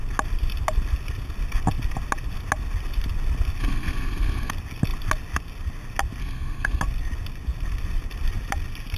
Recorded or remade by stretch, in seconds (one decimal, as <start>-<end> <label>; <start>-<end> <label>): 0.0-3.6 recorded; 3.6-4.5 remade; 4.5-6.2 recorded; 6.2-6.8 remade; 6.8-9.0 recorded